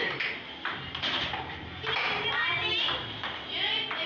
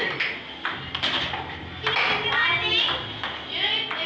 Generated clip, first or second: first